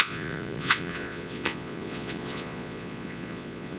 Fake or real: fake